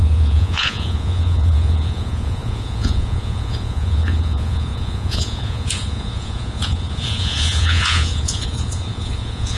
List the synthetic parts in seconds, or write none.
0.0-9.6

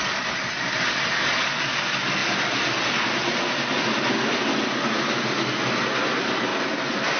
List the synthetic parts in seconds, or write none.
none

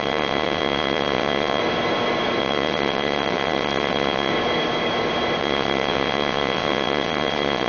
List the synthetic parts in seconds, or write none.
0.0-1.6; 2.4-4.3; 5.4-7.7

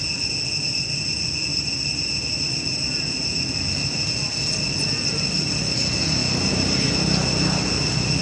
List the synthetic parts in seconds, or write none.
1.5-2.7; 6.2-6.9

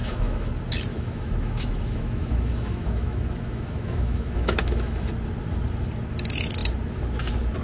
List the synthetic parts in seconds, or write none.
0.0-0.5; 0.9-5.1

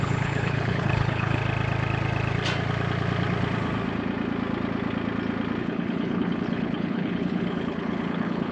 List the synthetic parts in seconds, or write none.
0.0-1.4; 5.6-8.5

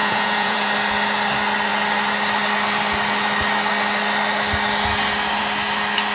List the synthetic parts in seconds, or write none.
0.0-0.7